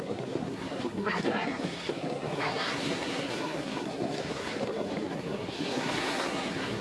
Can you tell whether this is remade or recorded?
remade